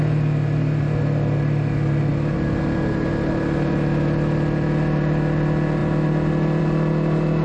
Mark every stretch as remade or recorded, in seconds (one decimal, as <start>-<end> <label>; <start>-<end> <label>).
0.0-7.4 recorded